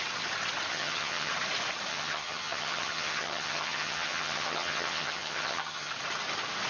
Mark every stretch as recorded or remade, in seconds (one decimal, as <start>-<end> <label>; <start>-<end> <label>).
0.0-0.7 recorded; 0.7-1.3 remade; 1.3-1.9 recorded; 1.9-5.9 remade; 5.9-6.7 recorded